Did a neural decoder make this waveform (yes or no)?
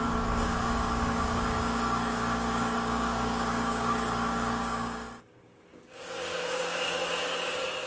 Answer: yes